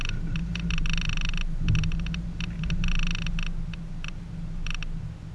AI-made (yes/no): no